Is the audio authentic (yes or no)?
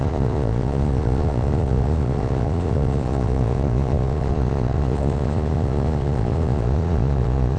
no